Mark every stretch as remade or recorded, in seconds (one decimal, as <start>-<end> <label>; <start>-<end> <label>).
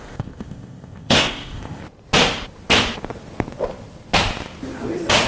0.0-1.8 remade; 1.8-5.3 recorded